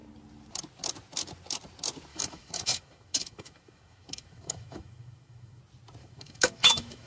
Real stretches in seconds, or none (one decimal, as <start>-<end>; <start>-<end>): 0.0-2.1; 5.6-6.0